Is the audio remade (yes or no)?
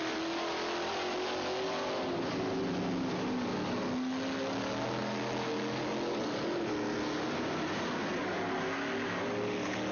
no